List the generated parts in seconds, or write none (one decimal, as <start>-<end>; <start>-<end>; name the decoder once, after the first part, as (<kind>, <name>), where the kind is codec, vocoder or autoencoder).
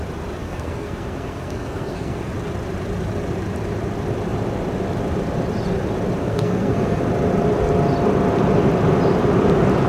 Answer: 0.4-2.3 (codec, SNAC); 6.2-7.0